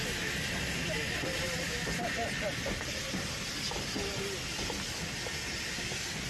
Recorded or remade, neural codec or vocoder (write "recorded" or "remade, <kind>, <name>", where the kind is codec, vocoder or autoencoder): recorded